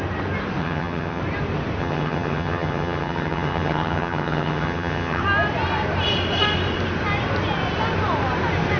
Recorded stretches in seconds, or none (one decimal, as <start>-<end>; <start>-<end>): 0.0-0.6; 1.2-1.8; 5.2-8.8